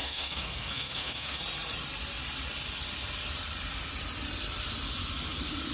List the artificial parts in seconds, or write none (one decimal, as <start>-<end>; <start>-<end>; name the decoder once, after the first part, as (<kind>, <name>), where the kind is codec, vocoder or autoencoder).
0.0-1.4 (codec, SNAC)